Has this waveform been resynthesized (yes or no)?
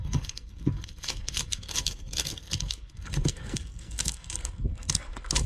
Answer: yes